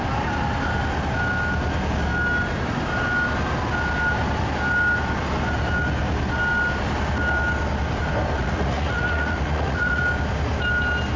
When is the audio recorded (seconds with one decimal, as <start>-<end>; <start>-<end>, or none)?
0.0-8.4; 10.0-11.2

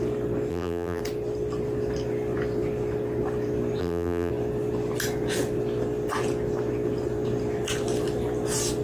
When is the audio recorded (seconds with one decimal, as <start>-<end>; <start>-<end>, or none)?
0.0-0.5; 1.0-3.8; 4.3-8.8

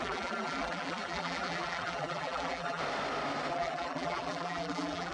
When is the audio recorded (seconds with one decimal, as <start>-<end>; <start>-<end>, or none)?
2.8-3.5

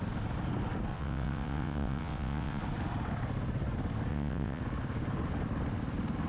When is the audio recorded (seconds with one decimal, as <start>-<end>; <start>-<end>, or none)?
0.0-0.9; 2.6-4.1; 4.6-6.3

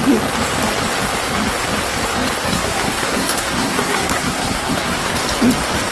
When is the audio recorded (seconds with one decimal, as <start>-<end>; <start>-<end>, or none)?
0.0-2.4; 5.1-5.9

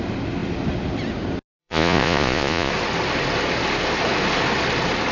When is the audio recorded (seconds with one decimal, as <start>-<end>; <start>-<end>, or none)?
0.0-1.6; 2.7-5.1

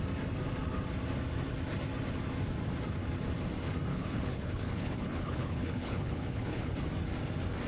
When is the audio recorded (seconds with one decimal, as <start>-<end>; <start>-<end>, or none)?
0.0-3.9; 6.9-7.7